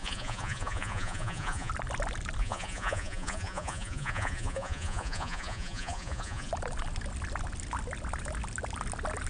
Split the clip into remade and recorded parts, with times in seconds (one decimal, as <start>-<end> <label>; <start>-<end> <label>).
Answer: 0.0-1.7 remade; 1.7-2.4 recorded; 2.4-6.5 remade; 6.5-9.3 recorded

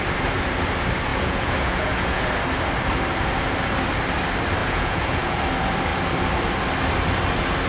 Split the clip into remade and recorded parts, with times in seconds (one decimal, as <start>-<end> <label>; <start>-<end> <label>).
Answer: 0.0-1.1 recorded; 1.1-2.3 remade; 2.3-4.6 recorded; 4.6-5.4 remade; 5.4-7.7 recorded

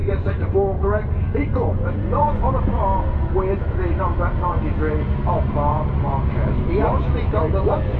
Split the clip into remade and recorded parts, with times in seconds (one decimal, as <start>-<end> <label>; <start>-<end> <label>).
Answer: 0.0-1.1 remade; 1.1-1.5 recorded; 1.5-2.4 remade; 2.4-8.0 recorded

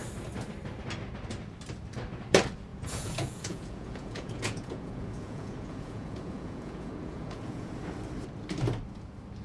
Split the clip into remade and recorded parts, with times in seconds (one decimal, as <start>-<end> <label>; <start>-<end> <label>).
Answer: 0.0-2.7 recorded; 2.7-7.7 remade; 7.7-9.4 recorded

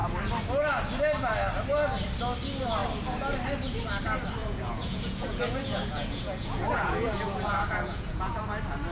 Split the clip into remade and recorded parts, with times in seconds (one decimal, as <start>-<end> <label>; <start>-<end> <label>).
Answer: 0.0-4.4 recorded; 4.4-8.4 remade; 8.4-8.9 recorded

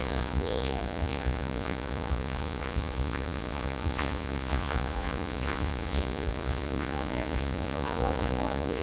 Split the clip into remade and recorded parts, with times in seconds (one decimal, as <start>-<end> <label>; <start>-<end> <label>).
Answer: 0.0-8.8 remade

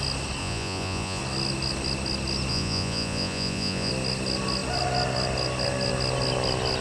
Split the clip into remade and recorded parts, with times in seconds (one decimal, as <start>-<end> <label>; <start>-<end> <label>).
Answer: 0.0-0.4 recorded; 0.4-1.2 remade; 1.2-2.5 recorded; 2.5-3.9 remade; 3.9-6.8 recorded

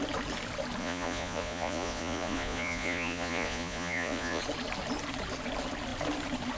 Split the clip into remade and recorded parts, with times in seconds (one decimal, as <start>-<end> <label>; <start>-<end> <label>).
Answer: 0.0-0.8 recorded; 0.8-4.4 remade; 4.4-6.6 recorded